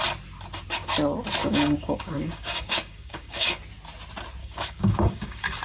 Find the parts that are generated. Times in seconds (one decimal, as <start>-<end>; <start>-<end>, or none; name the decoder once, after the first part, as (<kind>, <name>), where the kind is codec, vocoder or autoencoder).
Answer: 1.4-3.6 (codec, DAC); 4.4-5.6